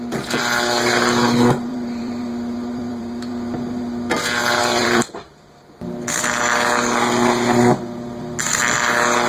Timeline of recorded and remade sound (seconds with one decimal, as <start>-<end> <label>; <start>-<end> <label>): 0.0-1.7 recorded; 1.7-3.8 remade; 3.8-4.6 recorded; 4.6-5.6 remade; 5.6-9.3 recorded